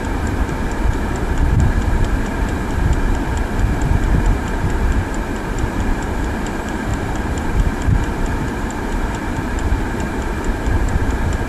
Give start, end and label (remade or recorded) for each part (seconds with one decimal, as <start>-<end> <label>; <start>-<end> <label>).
0.0-11.5 remade